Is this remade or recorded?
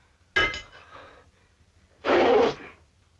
recorded